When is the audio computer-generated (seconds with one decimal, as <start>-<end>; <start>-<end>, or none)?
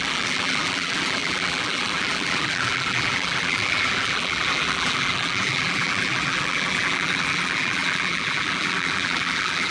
0.0-9.7